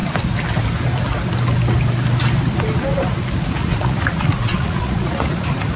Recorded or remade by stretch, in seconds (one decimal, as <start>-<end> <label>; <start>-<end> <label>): 0.0-3.5 recorded; 3.5-5.8 remade